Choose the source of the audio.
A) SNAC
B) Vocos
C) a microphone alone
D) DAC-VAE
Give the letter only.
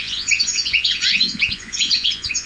B